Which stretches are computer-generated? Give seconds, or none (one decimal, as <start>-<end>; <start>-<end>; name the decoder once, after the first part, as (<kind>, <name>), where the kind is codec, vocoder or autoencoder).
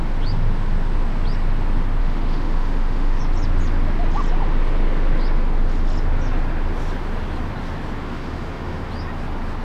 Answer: 2.0-3.2 (autoencoder, DAC-VAE); 8.0-8.9